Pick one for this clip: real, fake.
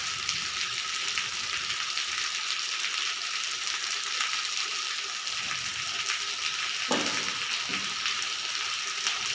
real